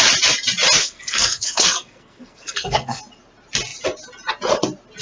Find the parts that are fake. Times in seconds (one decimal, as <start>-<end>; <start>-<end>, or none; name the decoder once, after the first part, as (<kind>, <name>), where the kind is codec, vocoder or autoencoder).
0.8-3.0 (codec, SNAC)

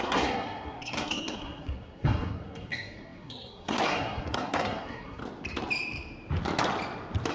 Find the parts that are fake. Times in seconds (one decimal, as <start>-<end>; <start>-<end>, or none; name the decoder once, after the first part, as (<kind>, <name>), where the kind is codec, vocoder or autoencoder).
0.0-5.2 (codec, SNAC)

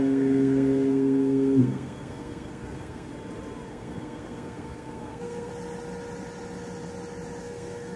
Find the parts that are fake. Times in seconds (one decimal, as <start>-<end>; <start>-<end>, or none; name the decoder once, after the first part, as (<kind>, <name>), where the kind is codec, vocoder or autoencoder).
0.0-3.1 (codec, SNAC); 3.7-5.5; 7.4-8.0

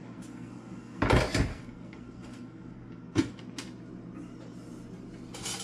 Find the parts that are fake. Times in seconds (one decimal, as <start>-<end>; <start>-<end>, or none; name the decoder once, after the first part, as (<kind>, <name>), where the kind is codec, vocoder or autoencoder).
0.0-1.0 (codec, SNAC); 1.5-3.4

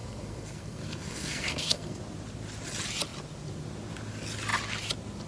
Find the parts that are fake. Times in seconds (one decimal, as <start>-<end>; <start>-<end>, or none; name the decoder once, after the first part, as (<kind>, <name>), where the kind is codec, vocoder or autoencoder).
0.0-2.0 (codec, SNAC)

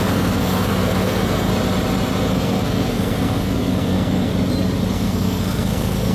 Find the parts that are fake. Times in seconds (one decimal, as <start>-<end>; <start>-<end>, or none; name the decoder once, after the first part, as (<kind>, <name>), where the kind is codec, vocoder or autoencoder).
0.0-1.5 (codec, SNAC); 2.3-4.3; 4.9-6.1

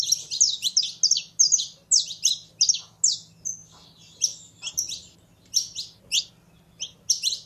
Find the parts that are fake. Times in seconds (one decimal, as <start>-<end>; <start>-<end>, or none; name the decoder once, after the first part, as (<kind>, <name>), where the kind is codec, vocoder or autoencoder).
none

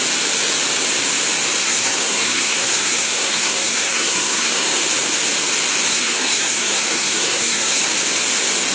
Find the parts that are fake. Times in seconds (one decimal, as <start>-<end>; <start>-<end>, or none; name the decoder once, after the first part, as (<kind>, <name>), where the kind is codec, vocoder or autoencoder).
1.6-4.8 (codec, SNAC); 5.9-7.8